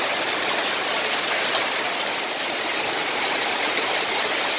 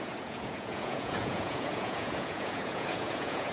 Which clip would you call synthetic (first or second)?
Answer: second